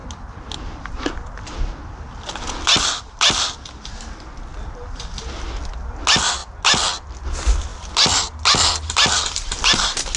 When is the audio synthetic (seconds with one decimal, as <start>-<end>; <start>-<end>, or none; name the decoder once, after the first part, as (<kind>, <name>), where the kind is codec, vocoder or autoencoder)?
none